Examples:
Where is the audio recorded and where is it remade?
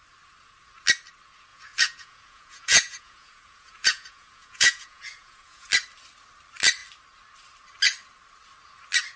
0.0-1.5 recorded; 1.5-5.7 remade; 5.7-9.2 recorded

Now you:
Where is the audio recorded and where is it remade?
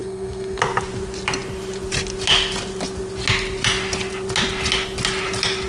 0.0-0.6 remade; 0.6-5.7 recorded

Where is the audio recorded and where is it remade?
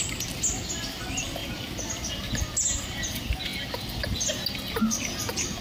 0.0-1.4 recorded; 1.4-2.1 remade; 2.1-5.6 recorded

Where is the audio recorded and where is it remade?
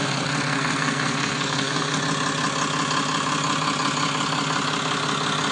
0.0-2.0 remade; 2.0-5.5 recorded